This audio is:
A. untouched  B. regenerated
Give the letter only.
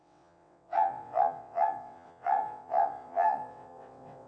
B